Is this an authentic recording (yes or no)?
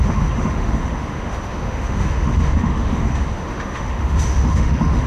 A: no